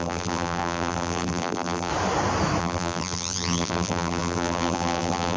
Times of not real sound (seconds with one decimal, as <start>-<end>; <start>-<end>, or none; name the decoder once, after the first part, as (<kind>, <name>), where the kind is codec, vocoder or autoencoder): 0.0-1.9 (vocoder, BigVGAN v2); 2.6-5.4